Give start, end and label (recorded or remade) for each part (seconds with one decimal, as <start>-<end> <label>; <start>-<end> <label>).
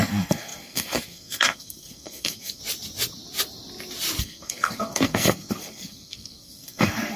0.0-2.6 remade; 2.6-4.2 recorded; 4.2-7.2 remade